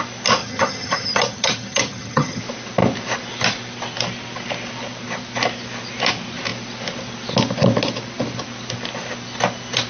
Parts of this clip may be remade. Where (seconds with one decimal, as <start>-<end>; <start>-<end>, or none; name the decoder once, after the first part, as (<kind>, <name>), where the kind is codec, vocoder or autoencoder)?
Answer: 0.4-2.4 (vocoder, HiFi-GAN)